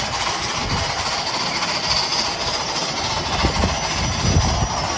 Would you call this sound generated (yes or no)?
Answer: no